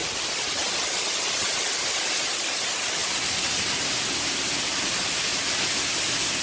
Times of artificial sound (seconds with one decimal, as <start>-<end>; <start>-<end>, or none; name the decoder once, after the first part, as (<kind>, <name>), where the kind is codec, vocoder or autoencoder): none